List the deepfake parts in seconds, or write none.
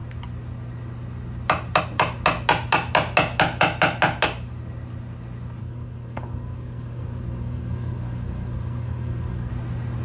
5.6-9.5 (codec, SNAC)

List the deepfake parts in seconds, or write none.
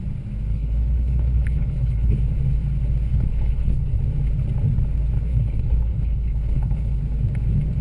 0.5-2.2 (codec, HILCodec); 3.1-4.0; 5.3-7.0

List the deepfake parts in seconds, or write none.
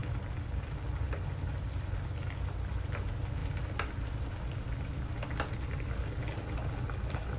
none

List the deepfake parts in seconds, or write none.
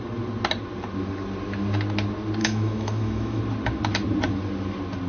2.4-3.4 (autoencoder, DAC-VAE)